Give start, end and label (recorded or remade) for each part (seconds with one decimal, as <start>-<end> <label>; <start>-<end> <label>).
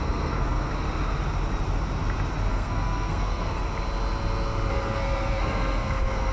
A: 0.0-0.7 remade; 0.7-2.5 recorded; 2.5-3.6 remade; 3.6-4.7 recorded; 4.7-6.3 remade